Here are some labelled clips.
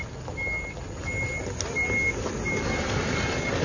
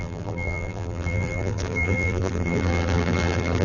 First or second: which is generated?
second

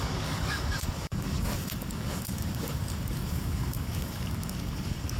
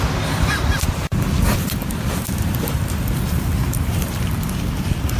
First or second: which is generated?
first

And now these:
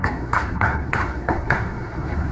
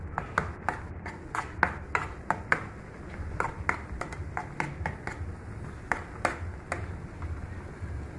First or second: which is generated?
first